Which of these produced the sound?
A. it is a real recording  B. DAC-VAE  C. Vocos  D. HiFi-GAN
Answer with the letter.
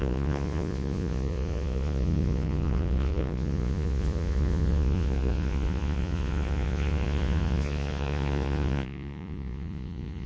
C